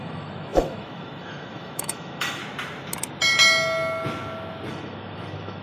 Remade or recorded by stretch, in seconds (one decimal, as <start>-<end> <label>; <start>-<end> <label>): 0.0-2.4 remade; 2.4-4.7 recorded; 4.7-5.6 remade